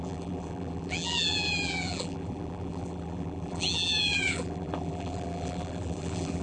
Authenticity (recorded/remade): remade